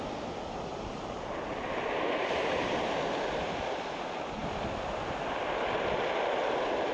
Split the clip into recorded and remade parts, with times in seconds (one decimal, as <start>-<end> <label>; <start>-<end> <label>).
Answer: 0.0-0.7 recorded; 0.7-3.0 remade; 3.0-6.9 recorded